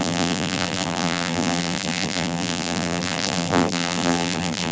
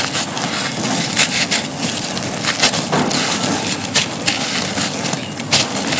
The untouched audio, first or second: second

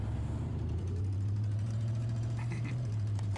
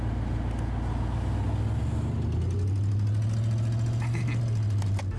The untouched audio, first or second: second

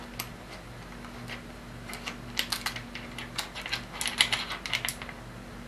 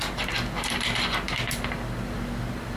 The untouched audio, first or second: first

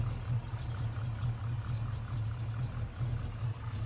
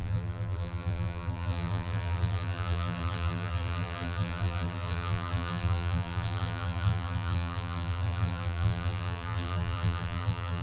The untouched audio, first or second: first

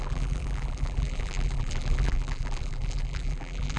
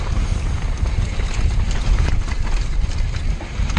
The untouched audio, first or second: second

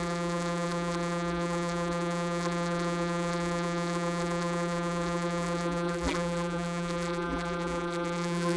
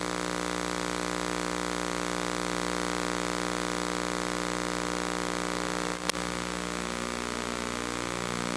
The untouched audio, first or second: second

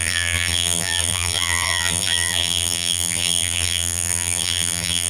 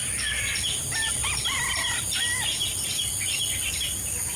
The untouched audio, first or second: second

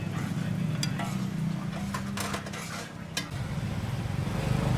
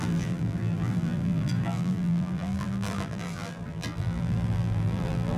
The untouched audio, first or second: first